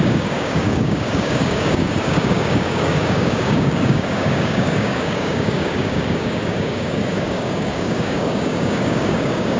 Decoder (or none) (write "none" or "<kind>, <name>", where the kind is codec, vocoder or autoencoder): codec, DAC